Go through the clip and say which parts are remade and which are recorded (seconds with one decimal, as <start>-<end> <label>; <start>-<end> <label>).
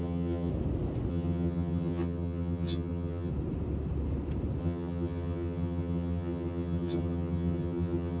0.0-0.5 remade; 0.5-1.1 recorded; 1.1-3.3 remade; 3.3-4.6 recorded; 4.6-8.2 remade